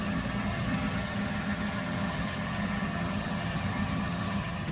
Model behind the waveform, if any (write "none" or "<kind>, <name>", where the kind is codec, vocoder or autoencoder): vocoder, HiFi-GAN